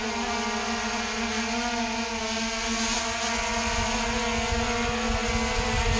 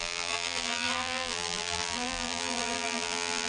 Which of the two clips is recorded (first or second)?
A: first